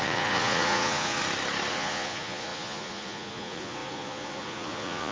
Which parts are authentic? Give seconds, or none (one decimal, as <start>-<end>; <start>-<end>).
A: 1.2-1.7